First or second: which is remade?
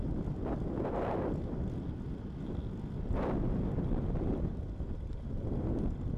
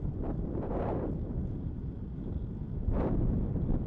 second